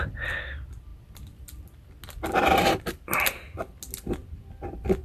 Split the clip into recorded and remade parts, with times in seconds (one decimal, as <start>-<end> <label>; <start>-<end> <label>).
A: 0.0-5.0 recorded